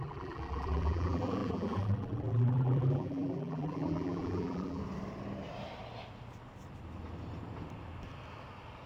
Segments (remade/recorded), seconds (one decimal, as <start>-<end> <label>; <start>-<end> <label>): 0.0-4.8 remade; 4.8-8.9 recorded